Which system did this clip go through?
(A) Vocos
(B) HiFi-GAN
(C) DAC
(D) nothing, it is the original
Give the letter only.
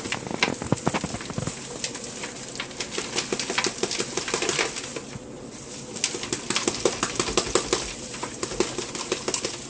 D